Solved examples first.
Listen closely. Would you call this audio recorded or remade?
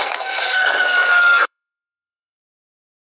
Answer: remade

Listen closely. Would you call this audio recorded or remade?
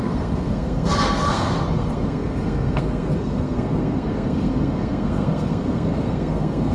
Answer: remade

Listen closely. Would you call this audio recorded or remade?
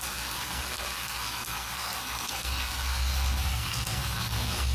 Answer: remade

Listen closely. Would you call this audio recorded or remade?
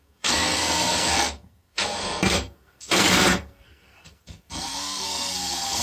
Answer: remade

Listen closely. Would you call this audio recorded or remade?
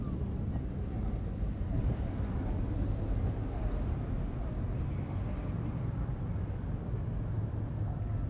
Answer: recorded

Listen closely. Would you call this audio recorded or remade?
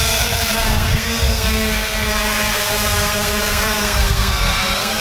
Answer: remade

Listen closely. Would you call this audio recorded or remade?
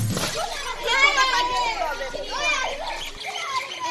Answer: recorded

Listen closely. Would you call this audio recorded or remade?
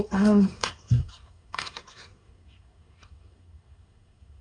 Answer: remade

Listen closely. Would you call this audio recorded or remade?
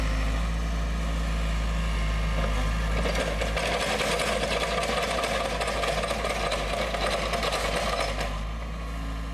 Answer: recorded